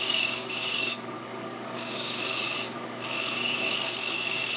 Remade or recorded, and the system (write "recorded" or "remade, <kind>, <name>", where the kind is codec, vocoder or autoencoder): remade, codec, DAC